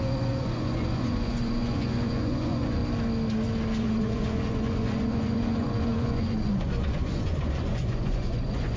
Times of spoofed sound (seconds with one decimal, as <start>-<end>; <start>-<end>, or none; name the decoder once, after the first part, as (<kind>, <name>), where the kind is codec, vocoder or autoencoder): 0.0-2.8 (vocoder, Vocos); 3.8-8.8

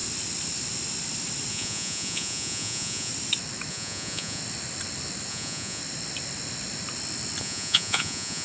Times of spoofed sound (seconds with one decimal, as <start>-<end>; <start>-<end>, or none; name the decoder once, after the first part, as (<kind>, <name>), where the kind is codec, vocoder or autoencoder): 1.5-3.1 (vocoder, Vocos); 3.7-4.4; 5.3-5.8; 7.4-8.4

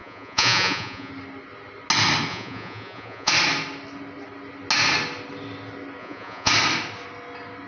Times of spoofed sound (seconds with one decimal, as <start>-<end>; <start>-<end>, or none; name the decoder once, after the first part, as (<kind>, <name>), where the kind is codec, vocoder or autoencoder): 0.0-1.1 (vocoder, Vocos); 2.3-3.3; 6.0-6.5

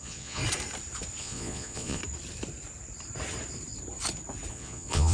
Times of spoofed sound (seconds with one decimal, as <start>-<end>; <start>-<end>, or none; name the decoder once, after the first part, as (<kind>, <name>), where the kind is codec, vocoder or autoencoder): 0.0-0.4 (vocoder, Vocos); 1.2-2.0; 4.5-5.1

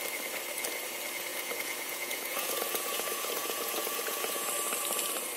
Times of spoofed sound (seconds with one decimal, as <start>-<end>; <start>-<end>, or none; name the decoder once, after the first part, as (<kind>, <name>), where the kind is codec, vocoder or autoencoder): 1.3-4.5 (vocoder, Vocos)